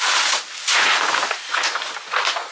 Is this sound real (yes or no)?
yes